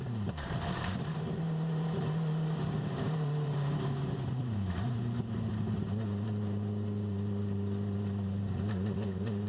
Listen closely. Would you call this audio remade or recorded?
remade